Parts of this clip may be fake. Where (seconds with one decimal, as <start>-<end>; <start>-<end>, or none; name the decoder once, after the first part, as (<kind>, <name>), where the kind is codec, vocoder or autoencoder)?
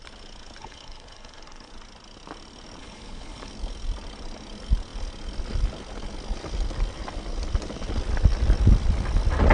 0.6-1.7 (codec, HILCodec); 2.8-3.5